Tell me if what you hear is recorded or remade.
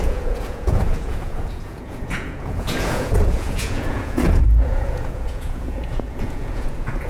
remade